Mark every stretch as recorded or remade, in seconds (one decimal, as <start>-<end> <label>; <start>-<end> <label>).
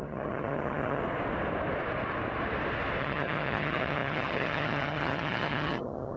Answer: 0.0-1.0 remade; 1.0-3.0 recorded; 3.0-6.2 remade